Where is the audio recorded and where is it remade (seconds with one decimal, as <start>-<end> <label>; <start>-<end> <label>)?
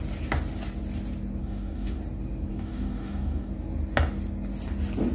0.0-1.4 recorded; 1.4-2.0 remade; 2.0-2.5 recorded; 2.5-3.5 remade; 3.5-5.1 recorded